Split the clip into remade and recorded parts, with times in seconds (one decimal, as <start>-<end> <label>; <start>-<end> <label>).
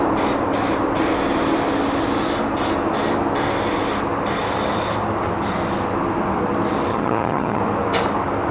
0.0-6.9 recorded; 6.9-7.6 remade; 7.6-8.5 recorded